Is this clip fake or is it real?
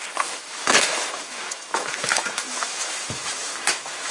fake